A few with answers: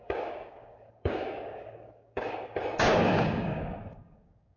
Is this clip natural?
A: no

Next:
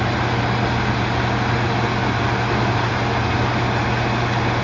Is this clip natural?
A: yes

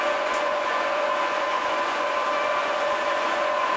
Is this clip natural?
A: no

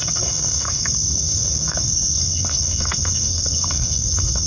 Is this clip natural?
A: no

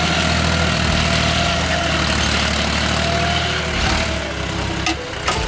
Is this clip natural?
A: yes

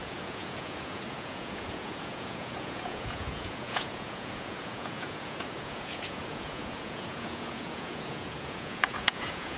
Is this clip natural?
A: no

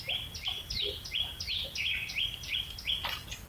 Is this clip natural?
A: yes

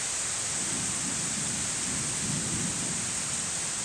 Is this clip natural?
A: yes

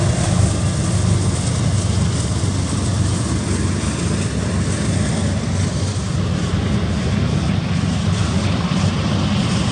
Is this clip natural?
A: yes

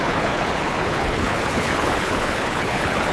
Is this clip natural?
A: no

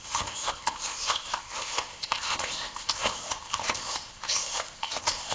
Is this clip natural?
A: no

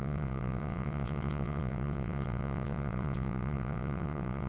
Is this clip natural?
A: no